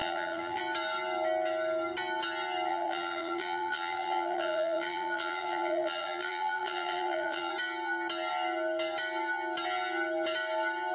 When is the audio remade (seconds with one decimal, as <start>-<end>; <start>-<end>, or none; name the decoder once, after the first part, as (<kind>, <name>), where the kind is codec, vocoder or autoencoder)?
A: 0.0-0.6 (vocoder, BigVGAN v2); 2.7-7.5